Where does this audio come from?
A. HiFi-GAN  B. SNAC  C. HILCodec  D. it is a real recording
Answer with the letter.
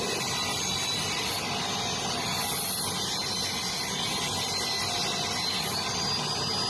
D